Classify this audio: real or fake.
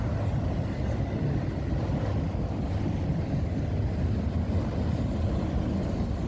real